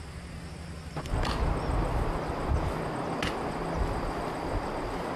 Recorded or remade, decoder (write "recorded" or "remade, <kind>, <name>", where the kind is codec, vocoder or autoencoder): recorded